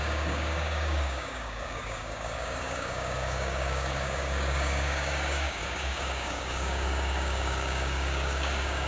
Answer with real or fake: fake